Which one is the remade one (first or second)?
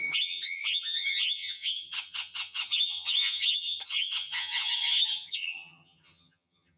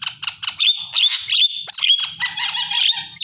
first